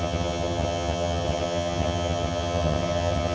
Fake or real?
fake